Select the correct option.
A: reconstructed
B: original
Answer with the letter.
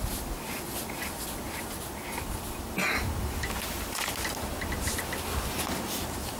B